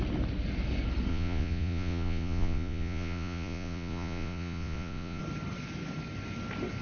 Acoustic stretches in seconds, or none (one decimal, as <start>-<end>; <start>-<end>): 0.0-1.1; 5.2-6.8